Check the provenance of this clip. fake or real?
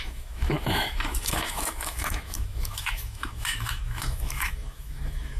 fake